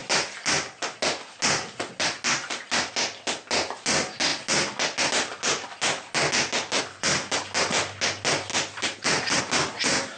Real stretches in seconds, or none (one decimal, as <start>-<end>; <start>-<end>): 0.0-8.5; 9.4-10.2